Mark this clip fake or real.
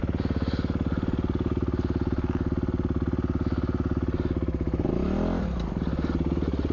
real